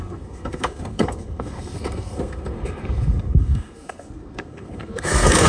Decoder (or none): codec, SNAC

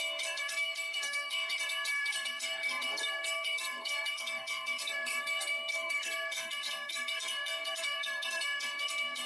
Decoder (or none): codec, SNAC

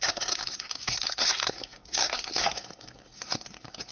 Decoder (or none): codec, SNAC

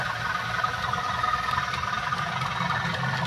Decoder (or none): none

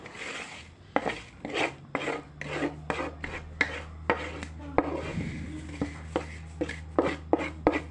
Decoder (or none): none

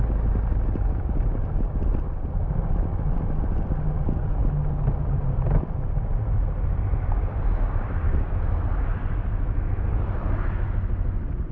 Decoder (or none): none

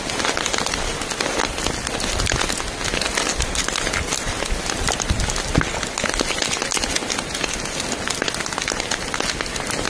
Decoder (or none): none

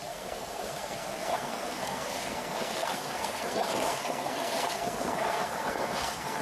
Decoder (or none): codec, SNAC